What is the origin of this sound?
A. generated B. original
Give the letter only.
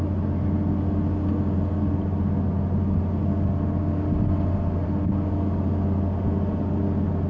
B